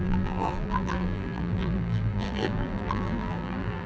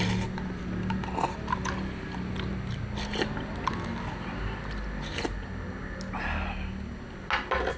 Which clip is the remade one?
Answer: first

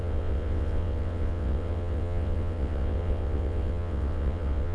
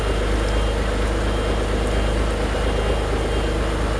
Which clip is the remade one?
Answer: first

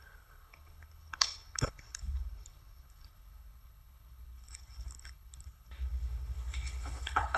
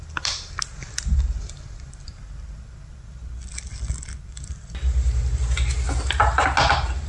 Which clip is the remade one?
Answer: first